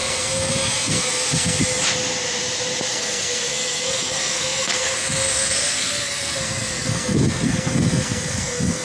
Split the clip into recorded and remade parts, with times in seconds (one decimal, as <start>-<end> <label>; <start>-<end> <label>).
0.0-1.6 remade; 1.6-2.9 recorded; 2.9-8.8 remade